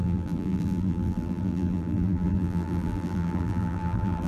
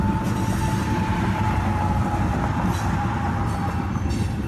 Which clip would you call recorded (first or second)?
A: second